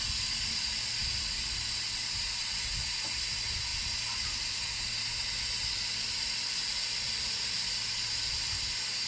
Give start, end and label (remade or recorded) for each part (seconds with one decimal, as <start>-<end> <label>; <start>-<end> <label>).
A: 0.0-9.1 recorded